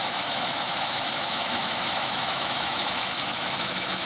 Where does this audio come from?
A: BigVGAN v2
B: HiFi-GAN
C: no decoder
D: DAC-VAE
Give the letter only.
D